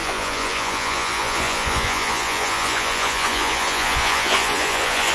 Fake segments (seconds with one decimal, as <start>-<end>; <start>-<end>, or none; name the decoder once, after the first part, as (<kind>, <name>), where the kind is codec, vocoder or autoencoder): 0.0-5.1 (vocoder, Vocos)